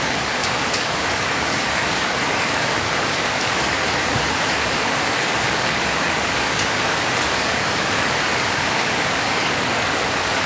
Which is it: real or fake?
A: fake